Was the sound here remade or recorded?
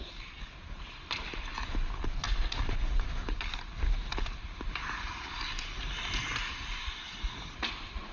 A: recorded